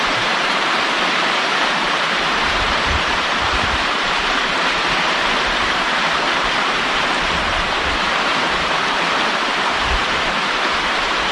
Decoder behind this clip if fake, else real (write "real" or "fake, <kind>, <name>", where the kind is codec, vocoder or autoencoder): fake, vocoder, BigVGAN v2